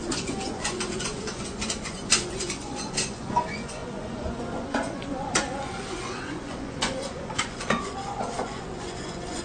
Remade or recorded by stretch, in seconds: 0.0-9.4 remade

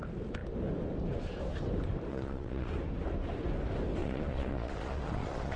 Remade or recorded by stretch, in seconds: 0.0-2.1 recorded; 2.1-2.7 remade; 2.7-4.0 recorded; 4.0-5.6 remade

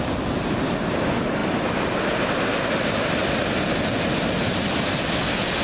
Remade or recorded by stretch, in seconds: 0.0-5.6 recorded